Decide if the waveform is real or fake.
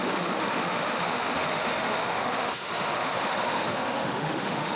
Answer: fake